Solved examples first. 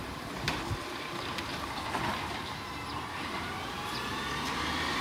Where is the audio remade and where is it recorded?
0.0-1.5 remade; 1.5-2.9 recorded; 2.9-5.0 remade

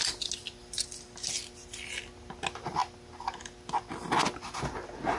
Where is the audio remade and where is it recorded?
0.0-5.2 recorded

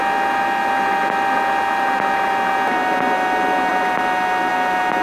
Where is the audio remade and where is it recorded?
0.0-5.0 recorded